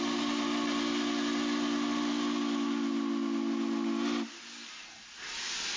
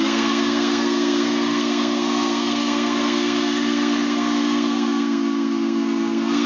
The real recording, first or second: first